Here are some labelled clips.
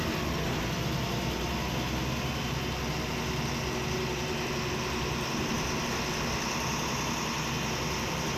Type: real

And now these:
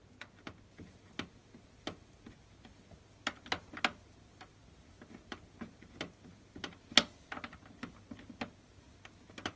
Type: real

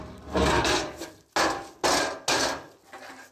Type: real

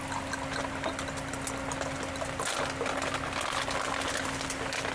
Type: real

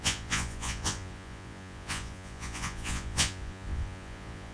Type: fake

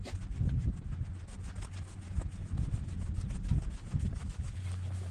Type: real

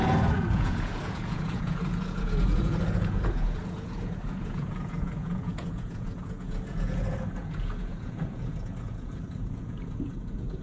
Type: fake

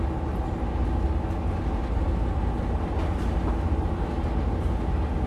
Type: real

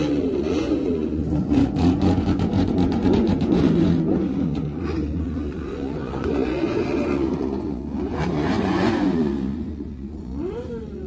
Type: fake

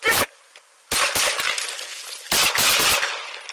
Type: real